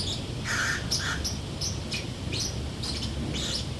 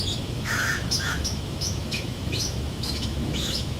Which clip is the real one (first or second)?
first